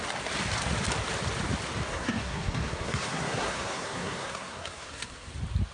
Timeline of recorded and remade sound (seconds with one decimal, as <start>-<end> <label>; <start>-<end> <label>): 0.0-1.9 recorded; 1.9-5.3 remade; 5.3-5.7 recorded